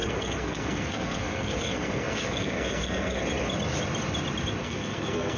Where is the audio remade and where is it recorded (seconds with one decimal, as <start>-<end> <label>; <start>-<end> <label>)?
0.0-3.2 remade; 3.2-4.6 recorded; 4.6-5.4 remade